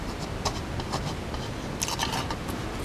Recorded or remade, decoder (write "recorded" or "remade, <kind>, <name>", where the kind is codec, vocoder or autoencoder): recorded